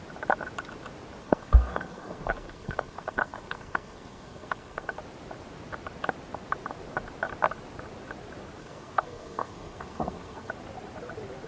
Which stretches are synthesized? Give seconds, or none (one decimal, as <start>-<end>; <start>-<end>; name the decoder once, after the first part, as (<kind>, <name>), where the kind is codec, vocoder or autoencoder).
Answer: 1.2-5.0 (codec, SNAC); 8.6-10.5